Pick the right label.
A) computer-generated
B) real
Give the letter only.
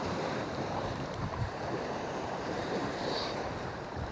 A